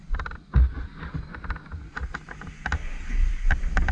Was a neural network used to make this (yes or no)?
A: no